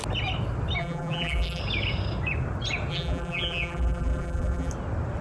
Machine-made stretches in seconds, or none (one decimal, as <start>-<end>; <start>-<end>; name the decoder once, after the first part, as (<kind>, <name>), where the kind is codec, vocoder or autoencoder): 0.8-1.6 (vocoder, BigVGAN v2); 2.9-4.7